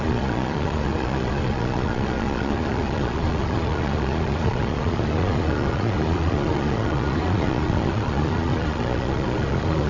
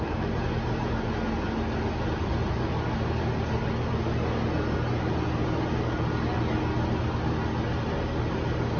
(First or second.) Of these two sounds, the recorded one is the second